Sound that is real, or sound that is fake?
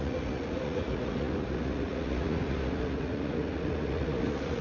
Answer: fake